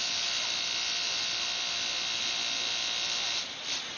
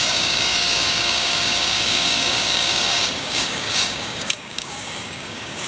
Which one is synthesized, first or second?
second